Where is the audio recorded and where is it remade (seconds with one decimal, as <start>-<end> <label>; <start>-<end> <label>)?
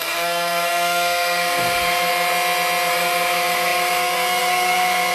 0.0-2.1 remade; 2.1-2.9 recorded; 2.9-5.1 remade